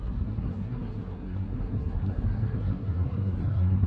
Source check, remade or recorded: remade